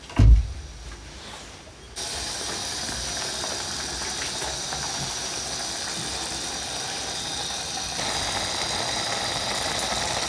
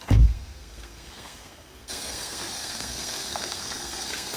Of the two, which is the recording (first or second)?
first